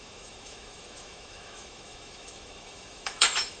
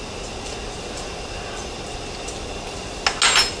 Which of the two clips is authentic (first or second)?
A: second